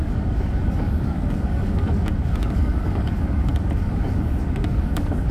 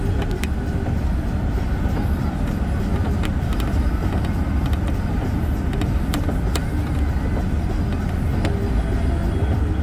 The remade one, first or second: first